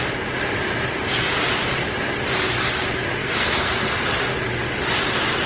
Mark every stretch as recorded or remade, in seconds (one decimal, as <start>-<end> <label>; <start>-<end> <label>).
0.0-3.2 recorded; 3.2-3.8 remade; 3.8-5.5 recorded